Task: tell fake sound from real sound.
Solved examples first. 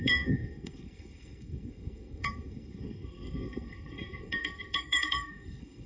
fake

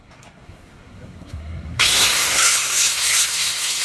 fake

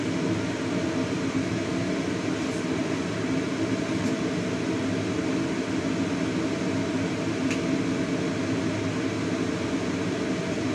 real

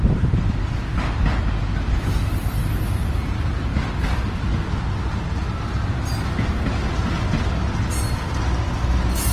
real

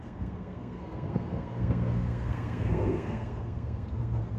fake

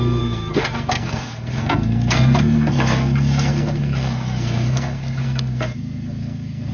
fake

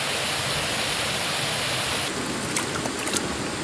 real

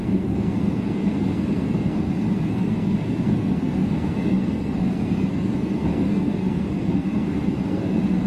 fake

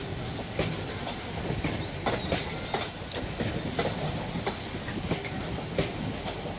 real